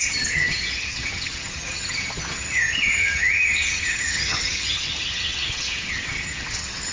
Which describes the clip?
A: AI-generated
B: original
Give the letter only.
A